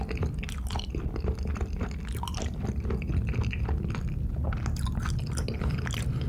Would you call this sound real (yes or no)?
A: yes